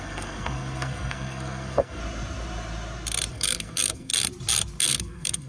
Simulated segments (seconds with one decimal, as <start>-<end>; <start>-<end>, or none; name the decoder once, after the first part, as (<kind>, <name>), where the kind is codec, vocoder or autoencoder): 0.0-2.0 (codec, SNAC); 3.3-4.1; 4.8-5.5